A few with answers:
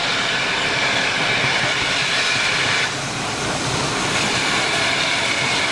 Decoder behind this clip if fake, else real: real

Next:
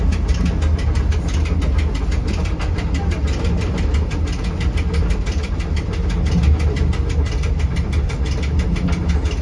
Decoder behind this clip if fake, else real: real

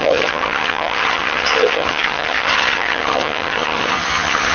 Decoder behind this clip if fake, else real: fake, vocoder, HiFi-GAN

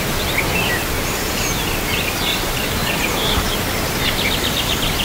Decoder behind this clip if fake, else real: real